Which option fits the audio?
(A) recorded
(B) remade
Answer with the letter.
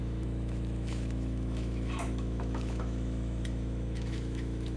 B